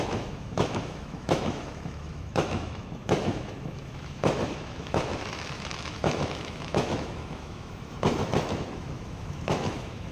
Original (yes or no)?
no